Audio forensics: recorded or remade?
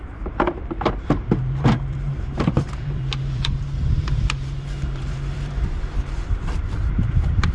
remade